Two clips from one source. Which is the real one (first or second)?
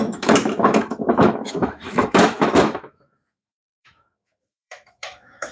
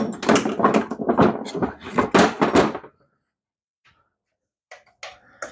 second